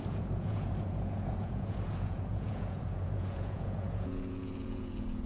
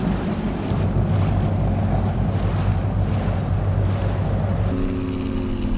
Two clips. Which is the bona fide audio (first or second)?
second